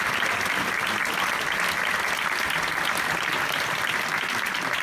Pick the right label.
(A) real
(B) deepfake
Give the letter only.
A